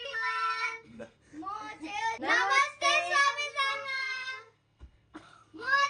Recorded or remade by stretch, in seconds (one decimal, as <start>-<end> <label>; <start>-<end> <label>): 0.0-1.3 remade; 1.3-3.7 recorded; 3.7-5.9 remade